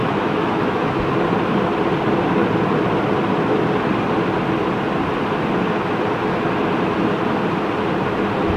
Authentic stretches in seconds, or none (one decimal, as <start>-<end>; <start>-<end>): 1.1-8.6